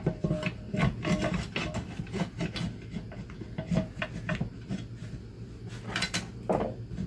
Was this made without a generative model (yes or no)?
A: yes